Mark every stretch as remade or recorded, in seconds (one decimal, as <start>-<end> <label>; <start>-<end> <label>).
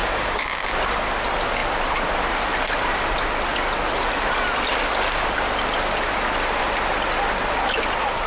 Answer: 0.0-0.7 remade; 0.7-8.3 recorded